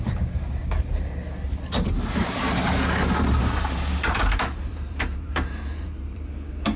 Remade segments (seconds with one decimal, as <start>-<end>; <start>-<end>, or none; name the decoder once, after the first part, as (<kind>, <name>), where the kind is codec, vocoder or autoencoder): 0.0-0.6 (vocoder, BigVGAN v2); 3.4-6.8